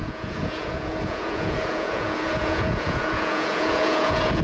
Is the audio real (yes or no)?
no